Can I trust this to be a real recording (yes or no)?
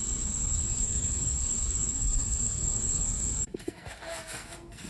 no